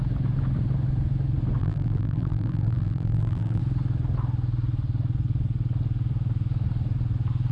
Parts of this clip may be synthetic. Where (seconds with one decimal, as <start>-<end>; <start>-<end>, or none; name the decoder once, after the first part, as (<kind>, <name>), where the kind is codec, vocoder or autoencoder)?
1.6-3.6 (vocoder, BigVGAN v2)